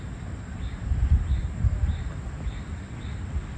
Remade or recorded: recorded